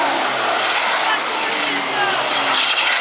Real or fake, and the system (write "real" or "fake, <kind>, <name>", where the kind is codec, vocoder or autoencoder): real